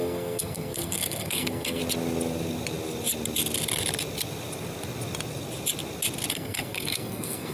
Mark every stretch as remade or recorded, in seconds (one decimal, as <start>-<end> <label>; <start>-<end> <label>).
0.0-1.8 remade; 1.8-6.3 recorded; 6.3-7.5 remade